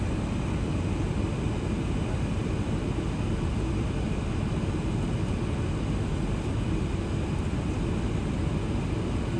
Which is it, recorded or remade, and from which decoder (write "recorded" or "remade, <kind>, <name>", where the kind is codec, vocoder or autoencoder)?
recorded